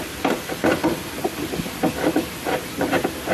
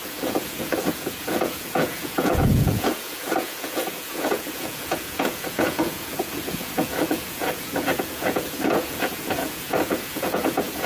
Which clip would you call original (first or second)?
first